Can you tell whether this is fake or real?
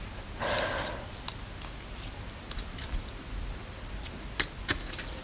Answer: real